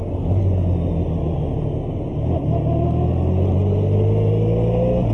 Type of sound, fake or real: real